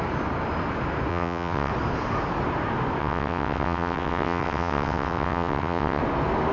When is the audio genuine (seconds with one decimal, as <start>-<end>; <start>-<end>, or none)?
0.0-1.1; 1.7-3.0; 6.0-6.5